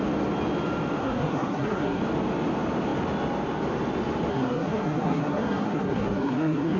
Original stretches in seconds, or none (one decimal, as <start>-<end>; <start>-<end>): 0.0-1.0; 2.0-4.3